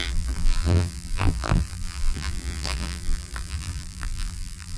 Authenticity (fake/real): fake